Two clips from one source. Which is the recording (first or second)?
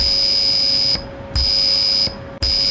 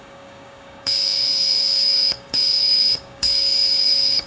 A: first